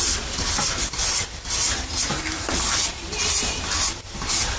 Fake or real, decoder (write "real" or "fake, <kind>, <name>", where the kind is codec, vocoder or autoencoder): real